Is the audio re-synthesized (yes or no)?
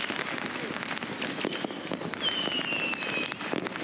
no